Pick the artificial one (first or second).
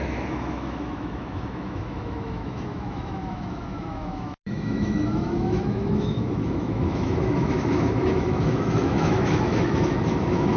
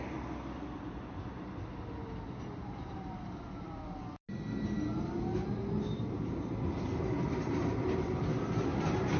first